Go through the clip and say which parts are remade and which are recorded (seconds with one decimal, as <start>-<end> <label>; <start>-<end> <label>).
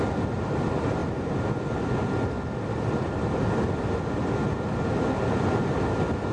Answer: 0.0-6.3 recorded